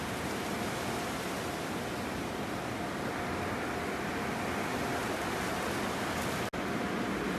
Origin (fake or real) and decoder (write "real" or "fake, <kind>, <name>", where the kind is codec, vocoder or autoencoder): real